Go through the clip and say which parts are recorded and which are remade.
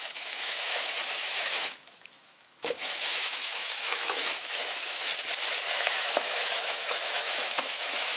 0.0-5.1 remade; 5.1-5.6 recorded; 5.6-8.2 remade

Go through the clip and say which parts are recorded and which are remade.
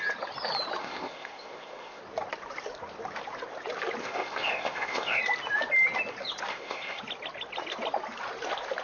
0.0-0.8 recorded; 0.8-2.0 remade; 2.0-4.0 recorded; 4.0-5.2 remade; 5.2-6.5 recorded; 6.5-7.0 remade; 7.0-8.8 recorded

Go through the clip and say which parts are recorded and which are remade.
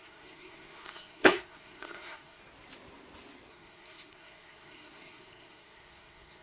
0.0-2.4 remade; 2.4-3.5 recorded; 3.5-6.4 remade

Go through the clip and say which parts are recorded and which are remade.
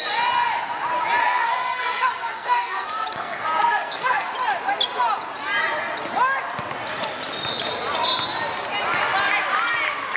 0.0-1.2 recorded; 1.2-4.3 remade; 4.3-10.2 recorded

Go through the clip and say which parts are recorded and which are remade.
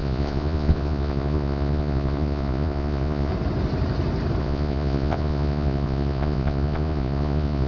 0.0-3.3 remade; 3.3-4.4 recorded; 4.4-7.7 remade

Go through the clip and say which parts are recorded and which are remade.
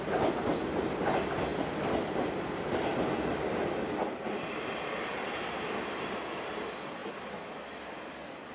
0.0-8.5 recorded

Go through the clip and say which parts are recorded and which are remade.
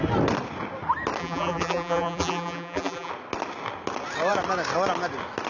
0.0-1.2 recorded; 1.2-3.1 remade; 3.1-5.5 recorded